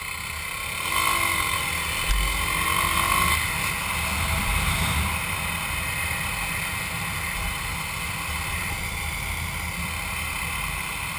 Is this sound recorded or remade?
recorded